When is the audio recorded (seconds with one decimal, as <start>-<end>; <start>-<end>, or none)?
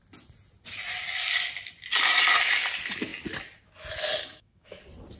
0.0-4.2; 4.8-5.2